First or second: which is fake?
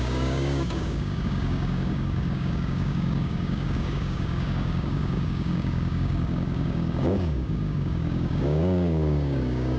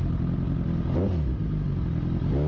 first